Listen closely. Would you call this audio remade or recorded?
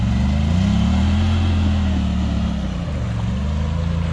recorded